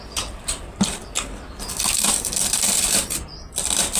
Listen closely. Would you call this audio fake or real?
fake